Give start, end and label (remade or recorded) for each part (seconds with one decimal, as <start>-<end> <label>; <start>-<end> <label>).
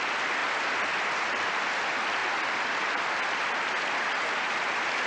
0.0-5.1 recorded